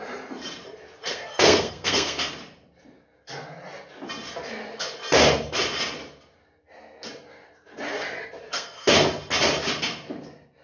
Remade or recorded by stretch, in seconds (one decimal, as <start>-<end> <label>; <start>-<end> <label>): 0.0-1.1 recorded; 1.1-2.3 remade; 2.3-8.4 recorded; 8.4-8.9 remade; 8.9-10.6 recorded